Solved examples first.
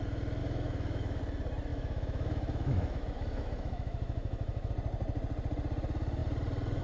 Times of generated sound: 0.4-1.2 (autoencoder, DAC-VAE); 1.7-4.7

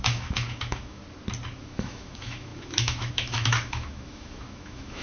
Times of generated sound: 0.0-1.0 (autoencoder, DAC-VAE); 1.6-5.0

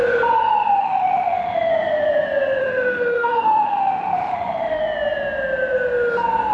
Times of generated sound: 0.8-1.7 (autoencoder, DAC-VAE); 2.6-4.8

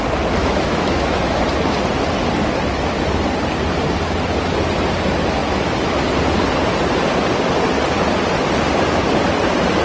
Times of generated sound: 0.4-1.4 (autoencoder, DAC-VAE)

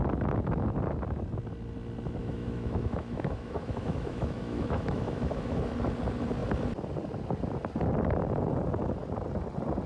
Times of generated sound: 2.2-5.7 (autoencoder, DAC-VAE)

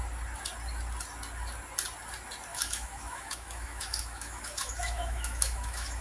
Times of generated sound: 2.5-6.0 (autoencoder, DAC-VAE)

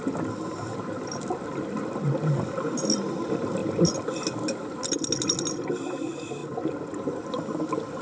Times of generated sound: none

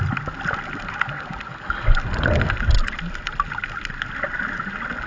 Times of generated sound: none